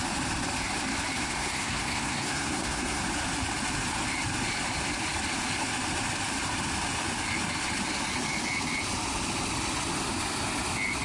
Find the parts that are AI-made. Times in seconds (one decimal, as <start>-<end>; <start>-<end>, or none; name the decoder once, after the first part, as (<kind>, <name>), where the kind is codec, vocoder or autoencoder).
1.2-3.0 (codec, SNAC)